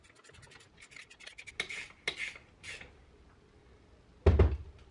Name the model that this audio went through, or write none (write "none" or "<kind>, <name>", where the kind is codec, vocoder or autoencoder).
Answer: none